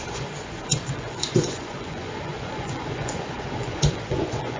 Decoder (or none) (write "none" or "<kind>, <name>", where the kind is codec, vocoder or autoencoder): vocoder, Vocos